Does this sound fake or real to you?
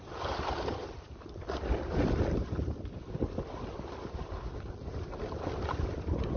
real